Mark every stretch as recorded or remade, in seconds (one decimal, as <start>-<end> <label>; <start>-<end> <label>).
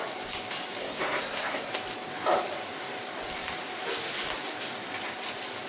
0.0-0.8 recorded; 0.8-1.7 remade; 1.7-5.7 recorded